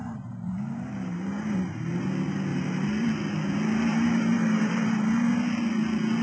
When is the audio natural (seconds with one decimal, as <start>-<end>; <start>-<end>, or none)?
2.0-2.5; 3.1-3.9; 5.3-6.2